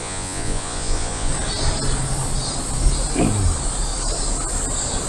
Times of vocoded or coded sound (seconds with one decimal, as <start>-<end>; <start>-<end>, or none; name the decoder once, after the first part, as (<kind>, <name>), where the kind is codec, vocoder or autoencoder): 0.0-1.3 (vocoder, Vocos)